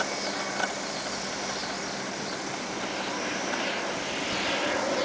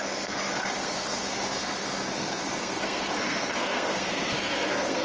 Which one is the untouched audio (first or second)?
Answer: first